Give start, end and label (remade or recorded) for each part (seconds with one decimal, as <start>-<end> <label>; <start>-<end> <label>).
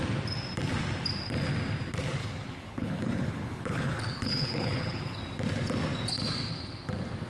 0.0-2.2 recorded; 2.2-5.2 remade; 5.2-7.3 recorded